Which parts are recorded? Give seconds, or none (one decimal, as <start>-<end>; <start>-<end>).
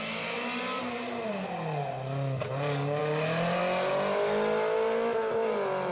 0.0-5.9